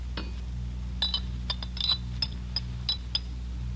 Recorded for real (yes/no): yes